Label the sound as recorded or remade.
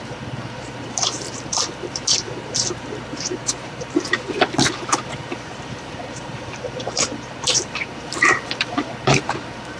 remade